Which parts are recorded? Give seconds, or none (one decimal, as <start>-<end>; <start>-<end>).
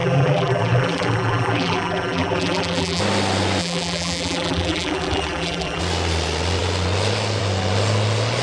3.0-3.6; 5.8-8.4